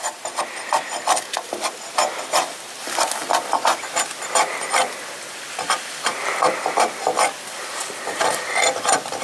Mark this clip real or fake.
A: fake